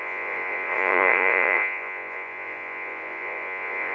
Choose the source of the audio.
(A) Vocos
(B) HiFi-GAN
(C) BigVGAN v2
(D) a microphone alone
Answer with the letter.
A